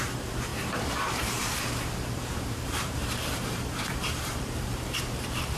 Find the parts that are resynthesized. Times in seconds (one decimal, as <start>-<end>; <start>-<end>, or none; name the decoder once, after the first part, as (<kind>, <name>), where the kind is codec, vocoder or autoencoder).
0.0-5.6 (vocoder, BigVGAN v2)